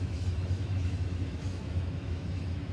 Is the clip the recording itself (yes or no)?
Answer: no